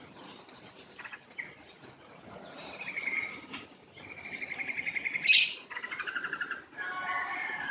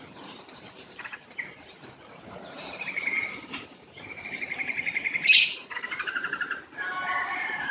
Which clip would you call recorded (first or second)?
first